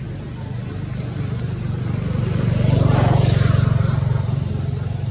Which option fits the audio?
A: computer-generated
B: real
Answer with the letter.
B